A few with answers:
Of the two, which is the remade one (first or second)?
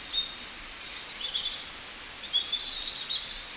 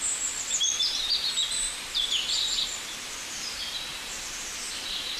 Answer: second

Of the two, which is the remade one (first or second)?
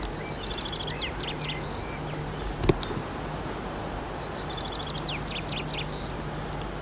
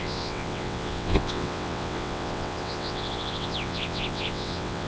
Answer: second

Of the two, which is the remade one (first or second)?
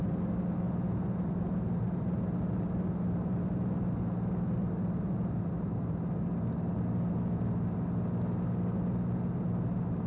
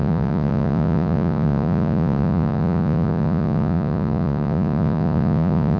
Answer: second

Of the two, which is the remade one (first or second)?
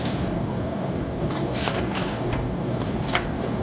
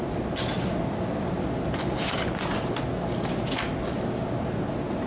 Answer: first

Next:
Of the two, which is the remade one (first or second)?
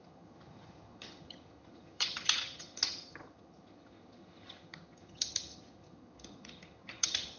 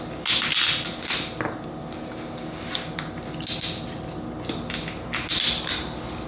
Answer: first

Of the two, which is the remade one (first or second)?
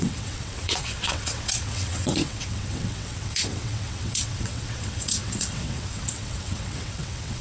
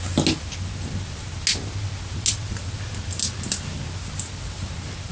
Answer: first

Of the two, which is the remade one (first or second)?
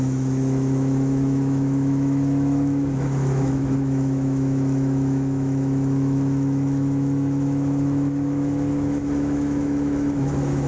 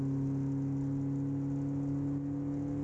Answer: first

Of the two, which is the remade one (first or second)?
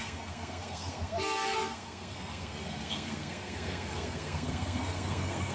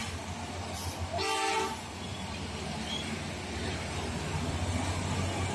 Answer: first